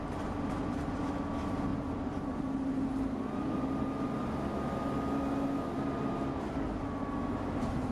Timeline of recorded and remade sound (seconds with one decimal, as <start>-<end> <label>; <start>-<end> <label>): 0.0-7.9 recorded